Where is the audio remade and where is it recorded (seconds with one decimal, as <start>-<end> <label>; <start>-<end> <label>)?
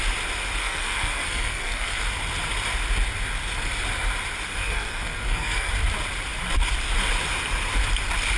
0.0-0.6 recorded; 0.6-2.0 remade; 2.0-4.5 recorded; 4.5-5.7 remade; 5.7-8.4 recorded